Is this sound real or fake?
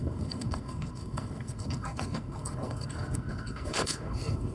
fake